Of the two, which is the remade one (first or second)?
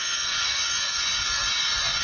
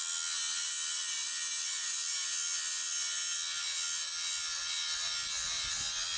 first